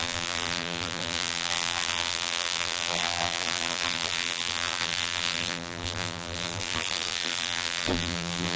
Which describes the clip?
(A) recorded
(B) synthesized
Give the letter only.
B